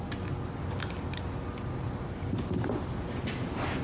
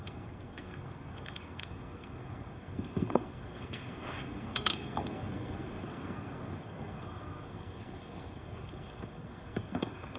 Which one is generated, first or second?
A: second